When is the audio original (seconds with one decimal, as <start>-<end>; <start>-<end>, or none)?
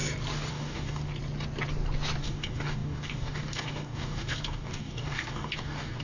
0.0-0.5; 1.1-2.2